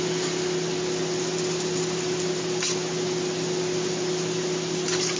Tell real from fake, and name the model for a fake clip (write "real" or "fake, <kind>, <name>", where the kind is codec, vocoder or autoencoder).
real